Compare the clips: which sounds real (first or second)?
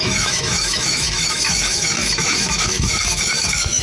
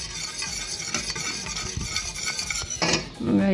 second